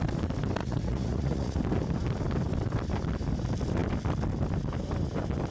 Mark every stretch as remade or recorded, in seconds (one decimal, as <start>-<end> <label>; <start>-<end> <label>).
0.0-0.6 recorded; 0.6-1.6 remade; 1.6-5.5 recorded